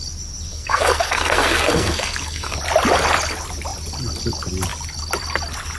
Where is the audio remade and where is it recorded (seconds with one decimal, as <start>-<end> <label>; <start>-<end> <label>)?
0.0-0.5 recorded; 0.5-2.6 remade; 2.6-5.8 recorded